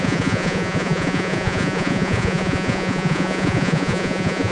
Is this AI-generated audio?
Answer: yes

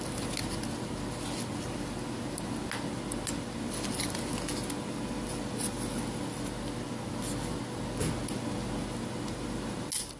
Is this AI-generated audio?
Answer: no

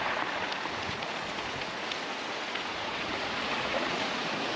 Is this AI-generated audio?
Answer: yes